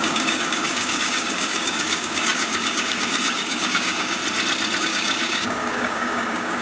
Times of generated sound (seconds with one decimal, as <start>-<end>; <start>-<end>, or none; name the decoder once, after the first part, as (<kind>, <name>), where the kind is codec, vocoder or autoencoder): 0.0-4.2 (codec, DAC); 4.8-6.6